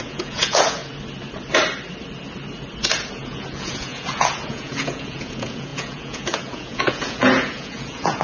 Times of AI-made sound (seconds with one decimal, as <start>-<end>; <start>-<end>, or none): 0.0-0.8; 3.1-8.2